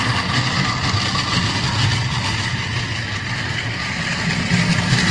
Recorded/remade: recorded